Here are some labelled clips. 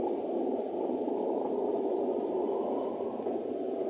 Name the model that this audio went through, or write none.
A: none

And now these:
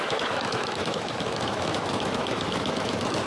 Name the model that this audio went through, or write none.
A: autoencoder, DAC-VAE